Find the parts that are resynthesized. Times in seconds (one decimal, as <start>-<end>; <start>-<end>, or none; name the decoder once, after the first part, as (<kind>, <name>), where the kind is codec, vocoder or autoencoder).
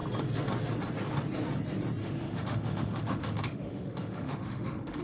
2.0-5.0 (autoencoder, DAC-VAE)